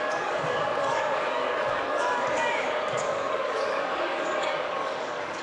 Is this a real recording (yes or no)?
no